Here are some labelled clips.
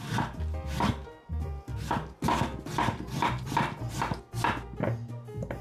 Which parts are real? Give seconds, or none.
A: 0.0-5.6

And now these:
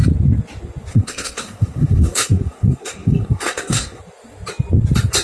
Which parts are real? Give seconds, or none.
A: 0.0-0.9; 4.0-5.2